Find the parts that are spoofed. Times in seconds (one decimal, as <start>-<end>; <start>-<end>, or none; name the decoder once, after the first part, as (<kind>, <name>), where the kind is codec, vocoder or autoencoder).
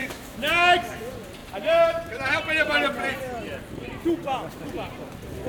0.0-0.5 (autoencoder, DAC-VAE)